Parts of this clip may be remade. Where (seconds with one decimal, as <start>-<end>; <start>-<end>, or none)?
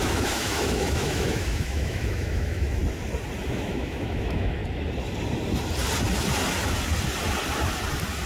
0.0-2.8; 3.4-4.6